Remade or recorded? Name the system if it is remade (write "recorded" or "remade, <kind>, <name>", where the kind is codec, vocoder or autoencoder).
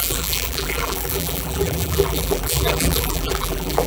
remade, vocoder, BigVGAN v2